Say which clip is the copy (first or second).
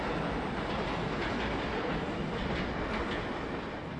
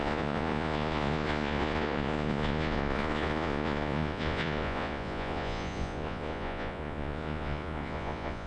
second